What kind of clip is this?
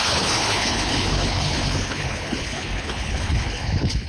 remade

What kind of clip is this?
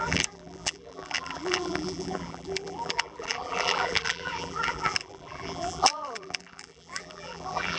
remade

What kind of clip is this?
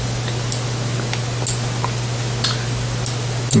recorded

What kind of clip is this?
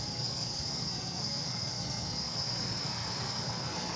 remade